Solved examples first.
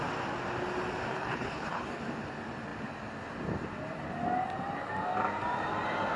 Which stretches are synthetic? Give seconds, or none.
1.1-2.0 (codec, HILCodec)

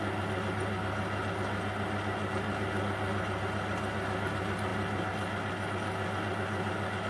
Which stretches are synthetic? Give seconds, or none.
none

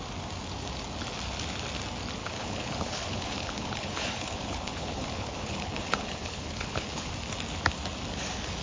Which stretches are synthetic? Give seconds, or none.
2.2-7.1 (codec, HILCodec)

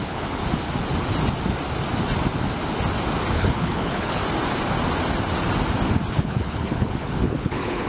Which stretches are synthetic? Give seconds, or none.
0.0-0.4 (codec, HILCodec); 3.3-4.2; 6.1-7.9

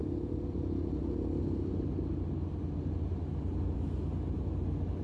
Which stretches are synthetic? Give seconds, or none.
none

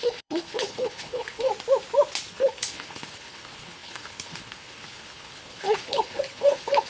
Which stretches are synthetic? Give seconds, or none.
0.0-1.5 (codec, HILCodec); 2.3-6.9

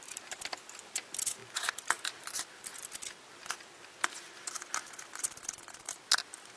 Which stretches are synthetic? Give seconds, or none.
none

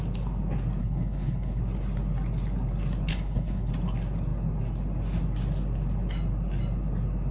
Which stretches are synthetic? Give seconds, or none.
0.8-1.6 (codec, HILCodec); 3.1-3.7